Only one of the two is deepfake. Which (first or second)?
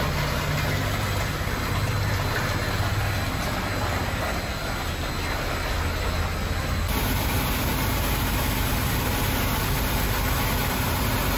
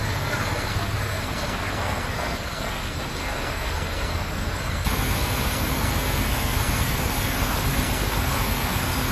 second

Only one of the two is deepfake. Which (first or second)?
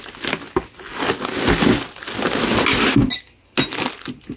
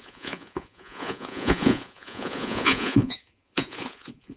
second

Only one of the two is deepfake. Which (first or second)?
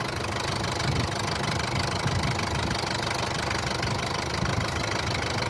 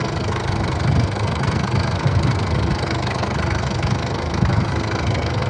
second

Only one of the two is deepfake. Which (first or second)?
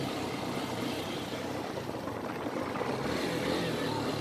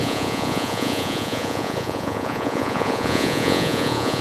second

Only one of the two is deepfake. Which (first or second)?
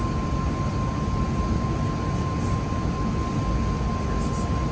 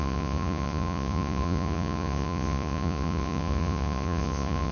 second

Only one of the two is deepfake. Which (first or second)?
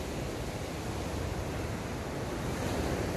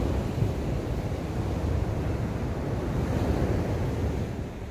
second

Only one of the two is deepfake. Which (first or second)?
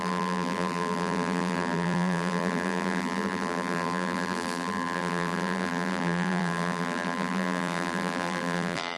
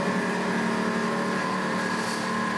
first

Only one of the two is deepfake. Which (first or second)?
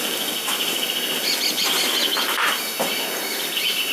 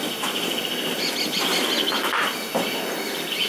second